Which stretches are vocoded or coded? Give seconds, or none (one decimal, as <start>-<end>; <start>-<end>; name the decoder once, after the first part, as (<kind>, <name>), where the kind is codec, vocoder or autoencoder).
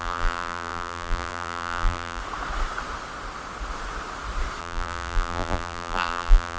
0.0-2.2 (vocoder, BigVGAN v2); 4.6-6.6